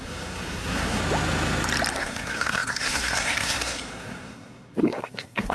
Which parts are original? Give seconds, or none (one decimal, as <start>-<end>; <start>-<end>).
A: 1.0-1.9